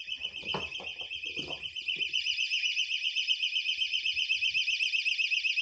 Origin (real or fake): real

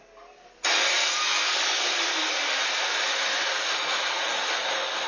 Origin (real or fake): real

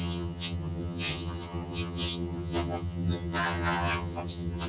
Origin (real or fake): fake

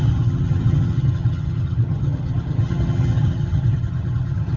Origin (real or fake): fake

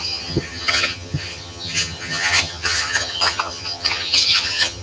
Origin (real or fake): fake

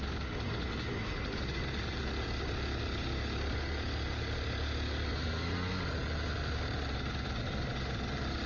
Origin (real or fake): real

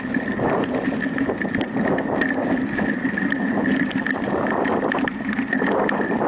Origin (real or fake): real